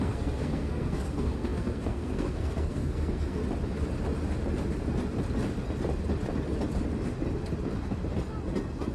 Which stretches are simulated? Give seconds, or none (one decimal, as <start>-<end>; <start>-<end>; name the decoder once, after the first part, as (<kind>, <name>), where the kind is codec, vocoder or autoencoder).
0.0-3.4 (codec, SNAC)